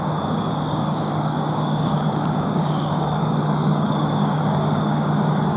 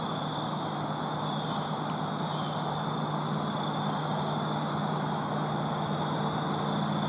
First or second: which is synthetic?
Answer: first